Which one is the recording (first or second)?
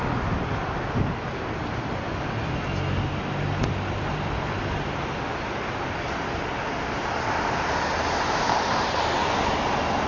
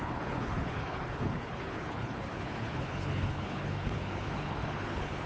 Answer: first